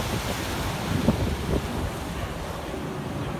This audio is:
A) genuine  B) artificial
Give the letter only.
A